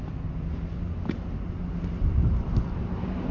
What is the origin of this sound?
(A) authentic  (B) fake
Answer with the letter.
A